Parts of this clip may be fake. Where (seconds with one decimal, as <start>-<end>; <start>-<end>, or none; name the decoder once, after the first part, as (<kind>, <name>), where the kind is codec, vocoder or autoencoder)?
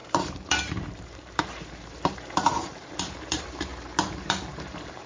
0.0-3.7 (vocoder, BigVGAN v2); 4.2-5.1